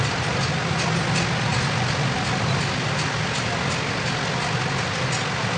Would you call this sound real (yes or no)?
yes